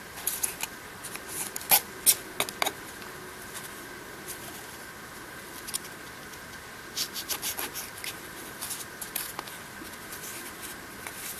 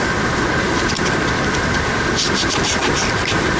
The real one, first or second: first